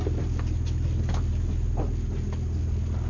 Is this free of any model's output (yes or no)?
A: yes